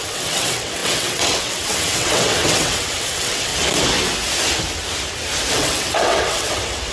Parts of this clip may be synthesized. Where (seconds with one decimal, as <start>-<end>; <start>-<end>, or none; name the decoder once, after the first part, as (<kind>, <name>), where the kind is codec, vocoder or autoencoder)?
0.0-3.5 (vocoder, WaveNeXt); 5.5-6.9